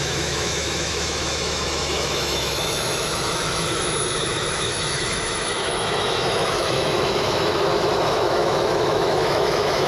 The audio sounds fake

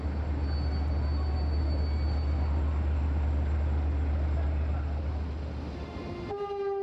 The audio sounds real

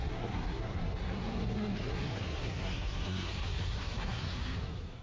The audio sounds fake